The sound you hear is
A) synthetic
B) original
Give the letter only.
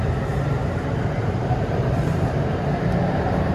A